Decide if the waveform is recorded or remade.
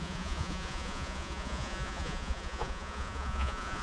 remade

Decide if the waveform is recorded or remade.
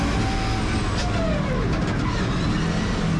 recorded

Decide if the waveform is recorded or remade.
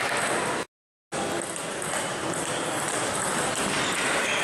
recorded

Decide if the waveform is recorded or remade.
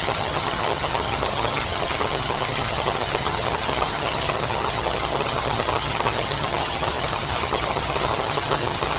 remade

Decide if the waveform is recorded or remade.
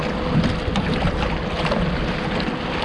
recorded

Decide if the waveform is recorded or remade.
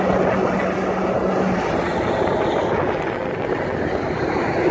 recorded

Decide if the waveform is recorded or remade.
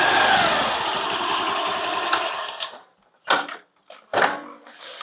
recorded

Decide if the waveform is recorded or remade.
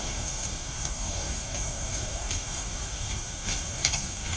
remade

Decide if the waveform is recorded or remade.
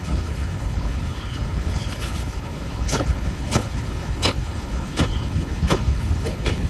remade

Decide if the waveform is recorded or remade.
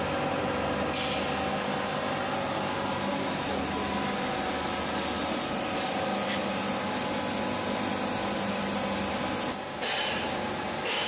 recorded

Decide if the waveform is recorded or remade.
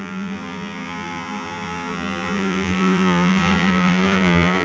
remade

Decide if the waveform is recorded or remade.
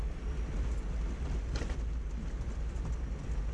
recorded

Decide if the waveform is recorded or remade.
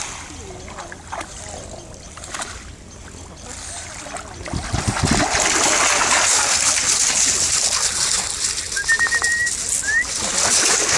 recorded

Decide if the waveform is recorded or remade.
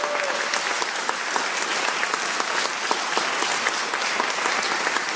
recorded